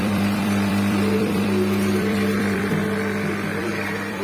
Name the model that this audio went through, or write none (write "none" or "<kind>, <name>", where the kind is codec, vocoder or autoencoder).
vocoder, BigVGAN v2